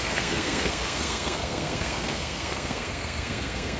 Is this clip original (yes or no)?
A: no